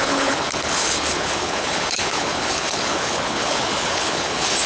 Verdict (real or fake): fake